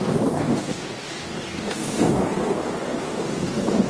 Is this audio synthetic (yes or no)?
yes